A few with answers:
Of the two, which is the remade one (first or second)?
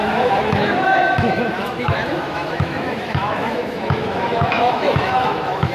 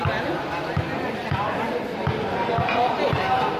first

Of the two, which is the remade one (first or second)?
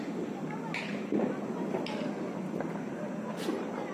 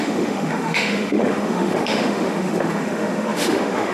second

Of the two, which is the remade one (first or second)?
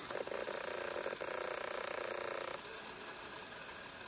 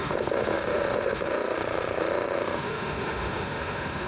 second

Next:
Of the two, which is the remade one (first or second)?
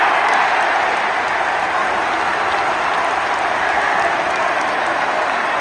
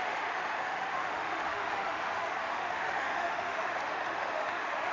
second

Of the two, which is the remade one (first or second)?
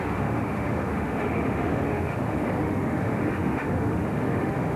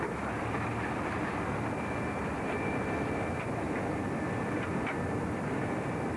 first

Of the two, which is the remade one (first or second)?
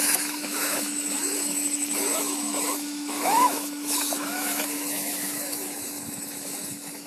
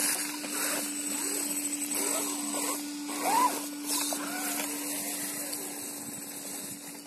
first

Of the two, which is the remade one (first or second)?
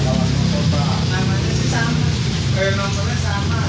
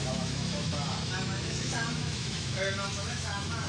second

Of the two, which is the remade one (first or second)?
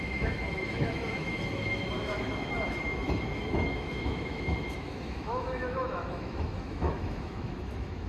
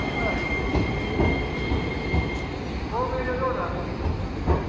first